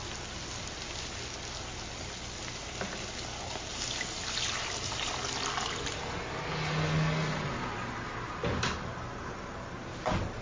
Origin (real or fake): real